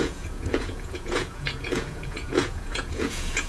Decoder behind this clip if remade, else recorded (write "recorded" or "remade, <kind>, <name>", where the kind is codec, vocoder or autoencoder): remade, vocoder, Vocos